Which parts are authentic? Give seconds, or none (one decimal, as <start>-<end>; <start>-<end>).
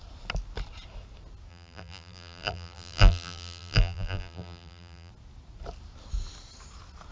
0.0-1.5; 5.1-7.1